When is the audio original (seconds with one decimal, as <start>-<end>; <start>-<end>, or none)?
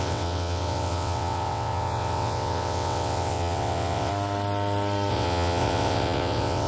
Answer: 4.1-5.1